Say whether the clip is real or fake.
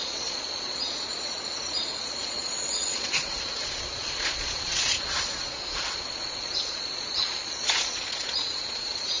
fake